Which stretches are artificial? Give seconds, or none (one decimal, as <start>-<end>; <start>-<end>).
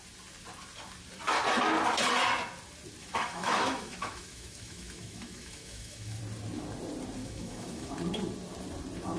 3.0-6.2; 7.2-7.9